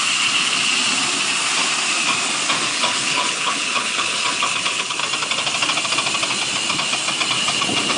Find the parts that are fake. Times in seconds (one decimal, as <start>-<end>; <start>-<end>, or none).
2.7-5.0